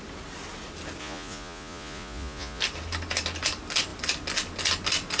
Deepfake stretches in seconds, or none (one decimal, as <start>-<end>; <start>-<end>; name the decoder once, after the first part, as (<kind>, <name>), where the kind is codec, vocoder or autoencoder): 1.0-2.6 (vocoder, Vocos)

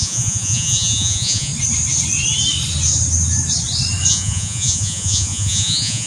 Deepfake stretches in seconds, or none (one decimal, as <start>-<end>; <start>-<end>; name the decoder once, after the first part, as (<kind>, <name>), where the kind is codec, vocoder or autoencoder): 0.0-1.5 (vocoder, Vocos); 4.1-6.1

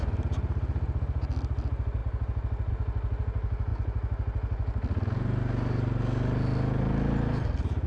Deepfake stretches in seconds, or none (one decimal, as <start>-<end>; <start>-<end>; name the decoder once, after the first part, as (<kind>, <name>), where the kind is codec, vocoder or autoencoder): none

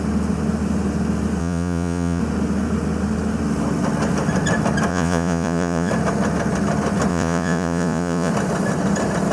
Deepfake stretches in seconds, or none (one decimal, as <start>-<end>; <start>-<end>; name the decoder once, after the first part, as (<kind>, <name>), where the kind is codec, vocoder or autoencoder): 1.4-2.2 (vocoder, Vocos); 4.9-5.9; 7.1-8.3

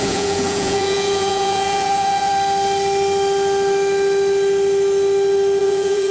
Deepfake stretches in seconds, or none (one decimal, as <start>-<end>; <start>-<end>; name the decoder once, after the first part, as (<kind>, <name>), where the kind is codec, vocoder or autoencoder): 0.0-2.3 (vocoder, Vocos); 5.6-6.1

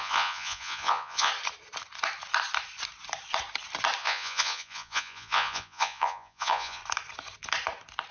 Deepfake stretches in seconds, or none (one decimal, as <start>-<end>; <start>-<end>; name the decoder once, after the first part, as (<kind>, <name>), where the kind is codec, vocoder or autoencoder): 0.0-1.3 (vocoder, Vocos); 4.0-6.8